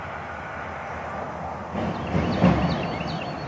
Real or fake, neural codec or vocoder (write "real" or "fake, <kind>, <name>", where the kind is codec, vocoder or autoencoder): real